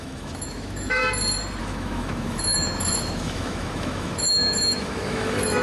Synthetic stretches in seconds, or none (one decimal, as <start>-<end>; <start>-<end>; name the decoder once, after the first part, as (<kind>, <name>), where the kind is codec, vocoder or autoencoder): 0.0-1.0 (autoencoder, DAC-VAE); 1.6-5.6